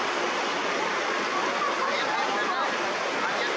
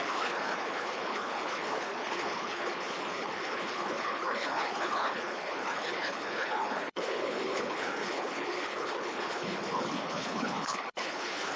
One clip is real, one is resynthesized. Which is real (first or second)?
first